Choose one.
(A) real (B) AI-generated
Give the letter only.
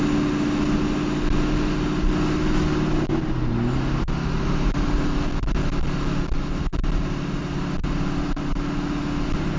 A